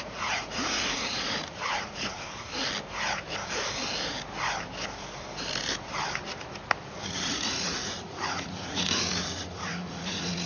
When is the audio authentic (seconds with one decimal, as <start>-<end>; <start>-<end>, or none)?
2.5-7.0

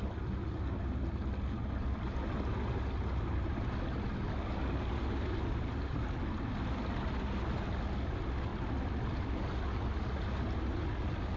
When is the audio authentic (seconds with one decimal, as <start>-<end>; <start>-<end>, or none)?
0.0-11.4

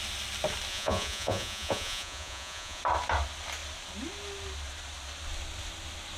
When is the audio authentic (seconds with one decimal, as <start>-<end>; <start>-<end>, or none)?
0.0-0.7; 2.8-6.2

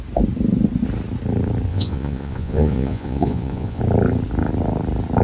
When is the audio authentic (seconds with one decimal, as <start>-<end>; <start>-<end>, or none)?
0.0-1.7; 3.8-5.2